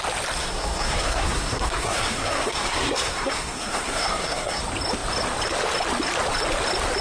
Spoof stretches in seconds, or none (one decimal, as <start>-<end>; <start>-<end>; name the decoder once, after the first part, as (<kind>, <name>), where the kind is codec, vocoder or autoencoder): 0.4-4.6 (codec, SNAC)